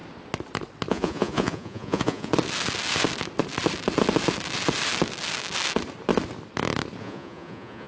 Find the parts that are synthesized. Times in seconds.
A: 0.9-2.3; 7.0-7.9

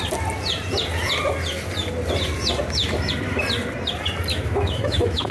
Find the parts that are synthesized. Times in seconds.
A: 4.3-5.3

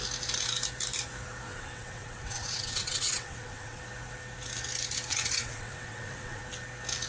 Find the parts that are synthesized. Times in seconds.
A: 1.5-3.8; 5.1-6.4

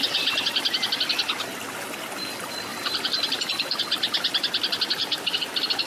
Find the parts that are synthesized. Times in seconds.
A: 2.7-3.8; 5.0-5.9

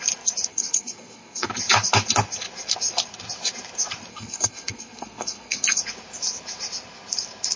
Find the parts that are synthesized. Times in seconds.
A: 0.5-1.5; 4.1-5.8

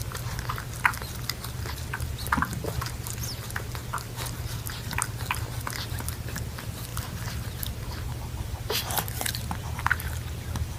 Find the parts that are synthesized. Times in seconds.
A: 2.5-3.1

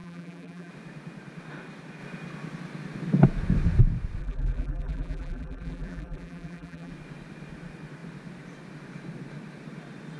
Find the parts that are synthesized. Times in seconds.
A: 0.0-0.7; 4.2-6.9

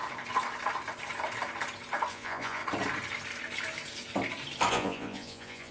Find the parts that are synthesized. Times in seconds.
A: 2.1-2.6; 4.7-5.7